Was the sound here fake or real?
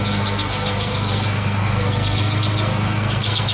fake